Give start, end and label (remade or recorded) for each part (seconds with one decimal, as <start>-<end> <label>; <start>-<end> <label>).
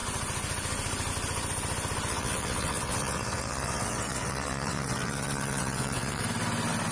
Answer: 0.0-2.1 recorded; 2.1-6.2 remade; 6.2-6.9 recorded